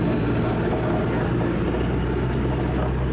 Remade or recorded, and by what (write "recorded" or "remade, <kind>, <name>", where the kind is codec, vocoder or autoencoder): recorded